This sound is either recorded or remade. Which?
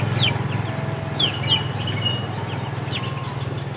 recorded